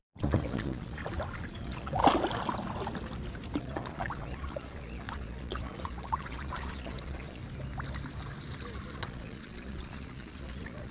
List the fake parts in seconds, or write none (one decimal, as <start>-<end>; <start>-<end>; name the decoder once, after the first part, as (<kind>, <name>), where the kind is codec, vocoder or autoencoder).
0.0-1.0 (vocoder, Vocos); 1.6-2.0; 3.6-7.4; 8.9-10.9